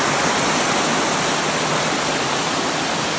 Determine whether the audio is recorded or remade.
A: recorded